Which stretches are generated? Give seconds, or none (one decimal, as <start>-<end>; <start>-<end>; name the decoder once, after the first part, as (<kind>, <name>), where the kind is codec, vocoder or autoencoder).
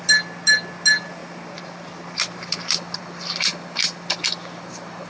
none